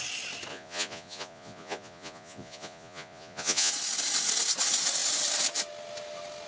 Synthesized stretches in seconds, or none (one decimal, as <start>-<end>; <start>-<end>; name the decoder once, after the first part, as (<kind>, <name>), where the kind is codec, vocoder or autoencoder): 0.5-3.7 (vocoder, Vocos)